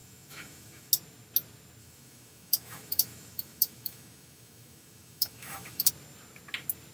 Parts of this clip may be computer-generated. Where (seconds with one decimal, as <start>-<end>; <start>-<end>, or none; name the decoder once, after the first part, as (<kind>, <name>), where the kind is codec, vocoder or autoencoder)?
0.0-0.9 (autoencoder, DAC-VAE); 1.8-5.9